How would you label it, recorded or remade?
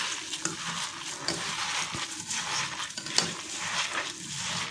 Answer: recorded